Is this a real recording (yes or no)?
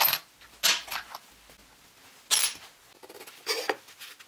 yes